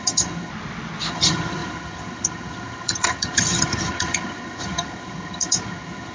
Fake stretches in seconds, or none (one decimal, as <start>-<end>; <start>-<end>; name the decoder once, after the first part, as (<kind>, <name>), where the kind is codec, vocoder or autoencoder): 0.0-0.5 (vocoder, HiFi-GAN); 1.1-6.1